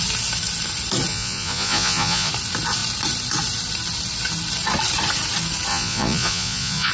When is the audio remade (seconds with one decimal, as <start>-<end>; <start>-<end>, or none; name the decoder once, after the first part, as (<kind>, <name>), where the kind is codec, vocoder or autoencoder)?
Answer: 1.1-2.3 (vocoder, Vocos); 5.7-6.9